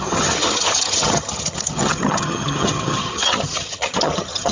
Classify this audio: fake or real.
fake